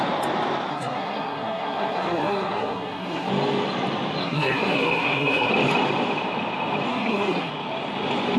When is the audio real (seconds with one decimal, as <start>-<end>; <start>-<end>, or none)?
0.0-0.7; 3.3-4.2; 5.5-6.9; 7.5-8.4